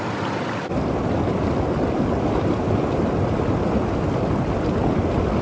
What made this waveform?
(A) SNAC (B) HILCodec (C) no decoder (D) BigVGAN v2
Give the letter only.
C